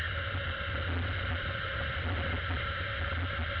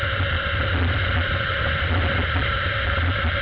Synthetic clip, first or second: second